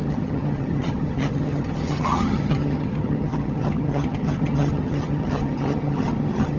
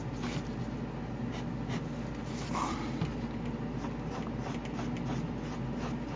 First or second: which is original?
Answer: second